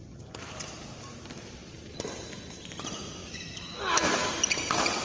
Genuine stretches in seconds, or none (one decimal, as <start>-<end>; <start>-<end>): 0.0-3.2; 4.3-5.0